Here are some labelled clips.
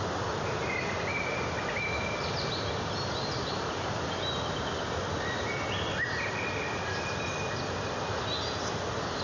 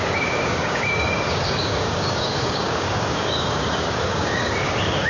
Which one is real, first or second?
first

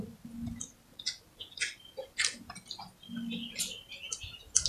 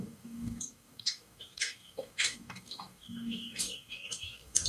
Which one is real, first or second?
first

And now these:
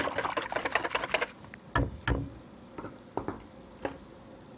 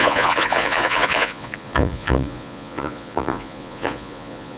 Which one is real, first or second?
first